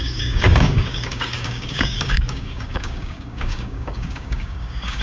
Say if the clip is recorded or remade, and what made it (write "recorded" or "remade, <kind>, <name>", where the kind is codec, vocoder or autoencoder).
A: remade, codec, DAC